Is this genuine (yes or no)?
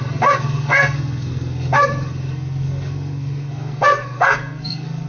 no